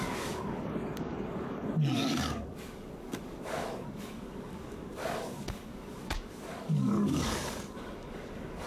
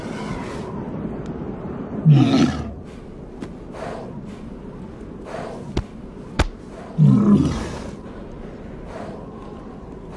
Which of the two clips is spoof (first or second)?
first